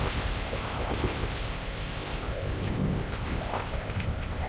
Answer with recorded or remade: remade